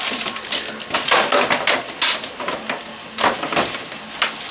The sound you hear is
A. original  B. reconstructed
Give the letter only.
A